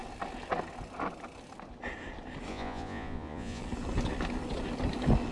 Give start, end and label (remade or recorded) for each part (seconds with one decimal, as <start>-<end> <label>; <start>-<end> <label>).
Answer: 0.0-2.5 recorded; 2.5-3.6 remade; 3.6-5.3 recorded